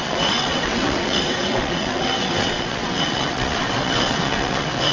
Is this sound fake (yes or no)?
yes